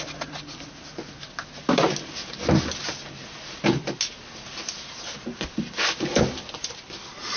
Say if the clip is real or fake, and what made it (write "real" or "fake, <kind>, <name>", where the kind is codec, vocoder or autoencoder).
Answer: real